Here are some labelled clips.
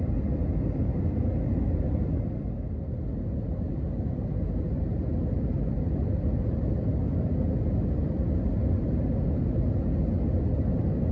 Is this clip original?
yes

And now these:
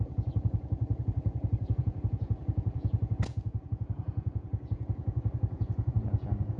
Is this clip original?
no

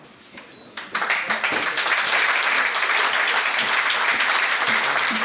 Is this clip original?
yes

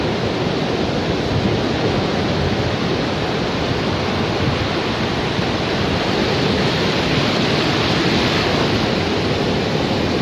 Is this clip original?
yes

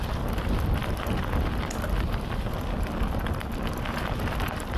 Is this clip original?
yes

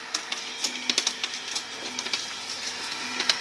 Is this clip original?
yes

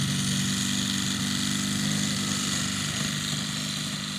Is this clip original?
yes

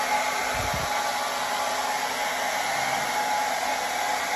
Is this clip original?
yes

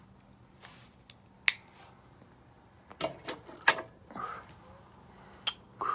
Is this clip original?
yes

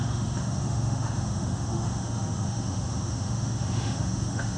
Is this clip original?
no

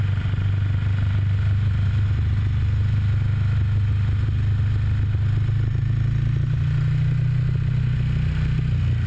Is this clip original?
yes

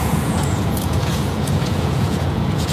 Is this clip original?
no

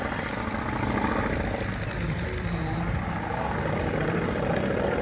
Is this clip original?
yes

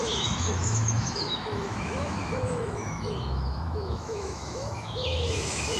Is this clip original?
no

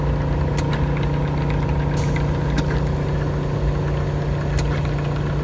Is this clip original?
yes